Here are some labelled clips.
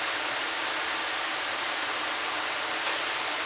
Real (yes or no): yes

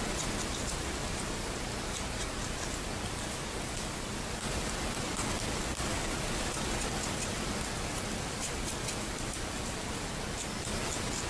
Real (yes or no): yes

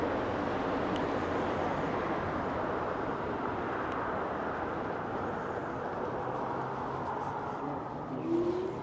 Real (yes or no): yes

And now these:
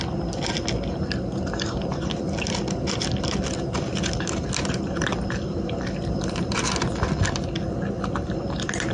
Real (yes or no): yes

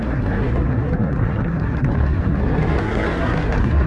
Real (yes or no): no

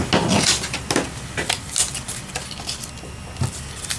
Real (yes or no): yes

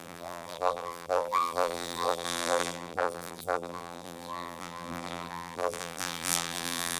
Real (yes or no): no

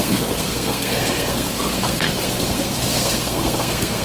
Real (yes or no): no